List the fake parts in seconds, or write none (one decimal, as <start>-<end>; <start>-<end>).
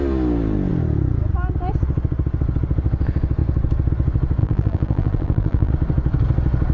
4.4-5.7